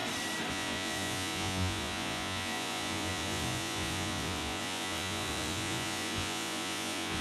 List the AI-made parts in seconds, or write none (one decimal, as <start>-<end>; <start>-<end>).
0.5-7.2